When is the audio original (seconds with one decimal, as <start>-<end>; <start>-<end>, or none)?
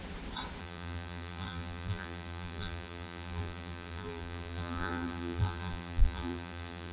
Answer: 0.0-0.6